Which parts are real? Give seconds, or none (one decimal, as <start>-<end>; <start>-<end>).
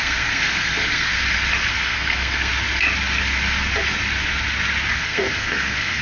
1.1-1.7; 2.5-4.9